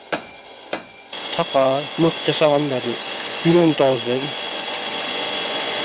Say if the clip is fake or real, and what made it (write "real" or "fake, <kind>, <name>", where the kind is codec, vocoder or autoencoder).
fake, vocoder, Vocos